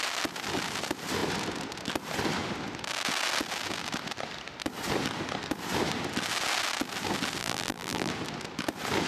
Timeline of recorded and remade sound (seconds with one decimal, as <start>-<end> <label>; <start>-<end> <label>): 0.0-7.4 recorded; 7.4-8.1 remade; 8.1-9.1 recorded